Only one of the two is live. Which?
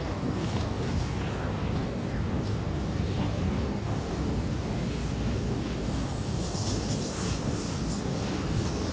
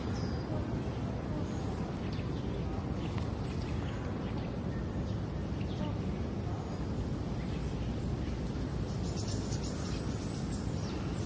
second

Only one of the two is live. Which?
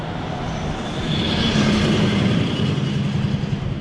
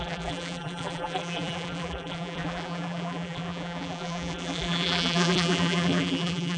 first